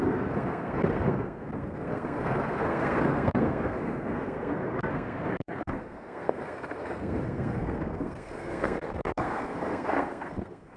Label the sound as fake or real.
fake